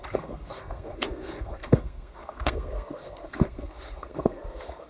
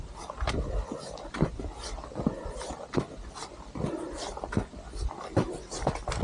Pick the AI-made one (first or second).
first